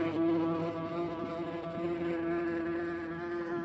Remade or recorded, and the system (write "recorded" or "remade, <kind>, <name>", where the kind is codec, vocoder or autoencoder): recorded